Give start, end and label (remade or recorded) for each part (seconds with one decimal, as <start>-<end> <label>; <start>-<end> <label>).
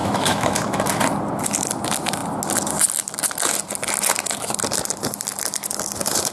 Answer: 0.0-0.9 remade; 0.9-6.3 recorded